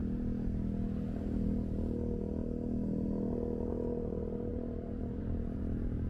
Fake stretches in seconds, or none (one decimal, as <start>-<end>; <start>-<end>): 3.7-6.1